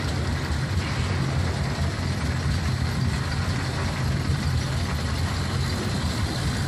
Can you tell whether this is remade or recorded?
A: recorded